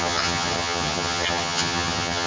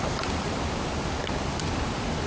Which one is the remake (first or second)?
first